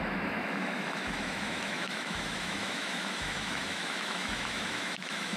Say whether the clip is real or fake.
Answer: fake